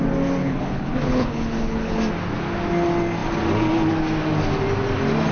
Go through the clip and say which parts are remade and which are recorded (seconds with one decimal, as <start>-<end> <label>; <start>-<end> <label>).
0.0-0.4 recorded; 0.4-2.0 remade; 2.0-5.3 recorded